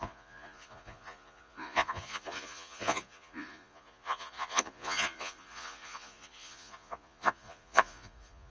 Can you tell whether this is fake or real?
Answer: fake